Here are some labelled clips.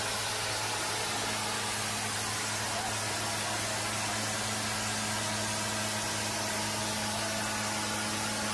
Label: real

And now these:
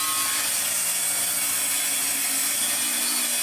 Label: real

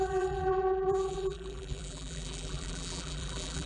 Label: fake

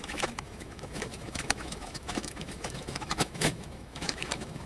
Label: fake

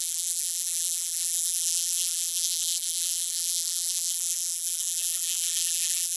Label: fake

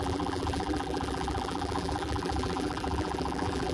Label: fake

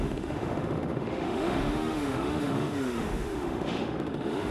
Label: fake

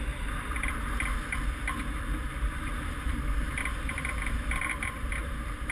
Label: fake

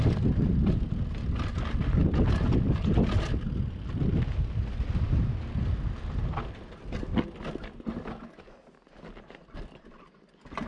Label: real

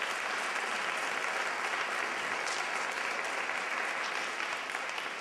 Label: real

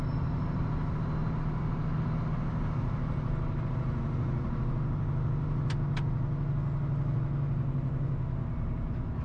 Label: real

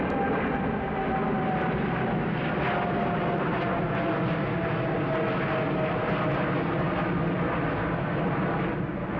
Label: real